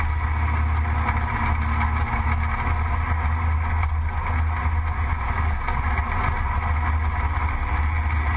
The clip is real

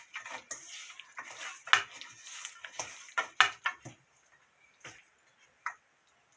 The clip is real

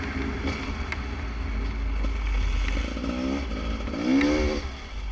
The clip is real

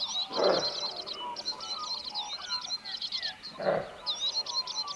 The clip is real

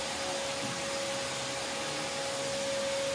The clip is real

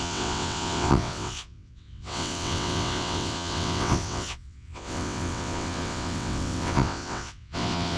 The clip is fake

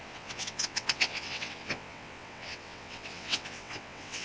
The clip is fake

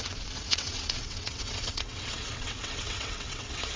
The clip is fake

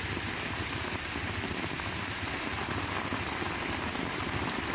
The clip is real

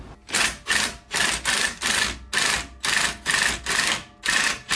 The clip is real